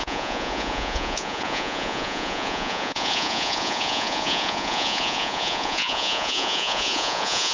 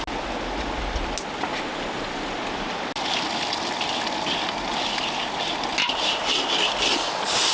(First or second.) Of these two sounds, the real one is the second